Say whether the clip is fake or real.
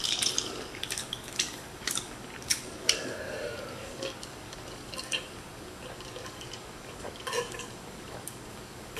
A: fake